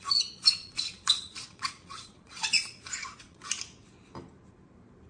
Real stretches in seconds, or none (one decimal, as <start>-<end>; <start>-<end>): 3.4-5.1

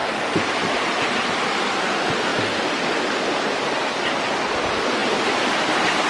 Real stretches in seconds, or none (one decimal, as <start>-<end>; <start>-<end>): 1.0-6.1

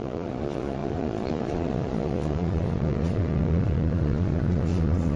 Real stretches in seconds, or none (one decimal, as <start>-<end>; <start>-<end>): none